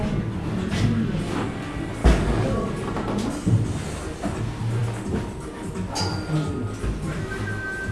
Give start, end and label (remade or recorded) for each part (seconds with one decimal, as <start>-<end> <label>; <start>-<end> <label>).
0.0-2.0 recorded; 2.0-2.7 remade; 2.7-7.9 recorded